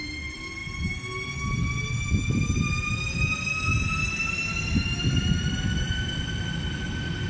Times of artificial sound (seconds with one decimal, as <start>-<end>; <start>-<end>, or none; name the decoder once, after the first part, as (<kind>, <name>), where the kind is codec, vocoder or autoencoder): 0.0-0.6 (vocoder, BigVGAN v2); 1.8-3.7; 4.7-7.3